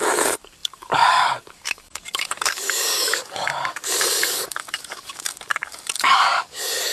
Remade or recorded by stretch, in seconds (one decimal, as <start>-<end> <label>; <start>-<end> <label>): 0.0-6.9 remade